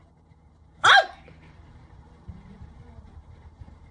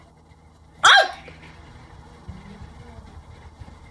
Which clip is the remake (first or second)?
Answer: first